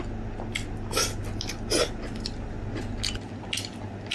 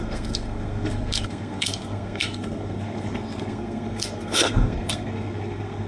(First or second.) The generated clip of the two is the second